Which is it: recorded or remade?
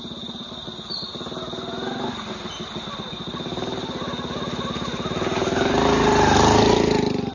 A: recorded